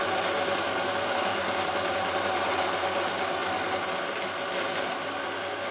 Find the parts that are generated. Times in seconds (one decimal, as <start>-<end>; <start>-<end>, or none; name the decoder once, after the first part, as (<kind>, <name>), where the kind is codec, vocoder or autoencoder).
1.3-2.5 (vocoder, BigVGAN v2)